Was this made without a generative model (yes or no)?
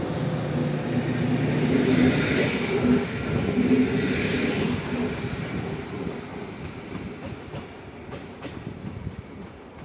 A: yes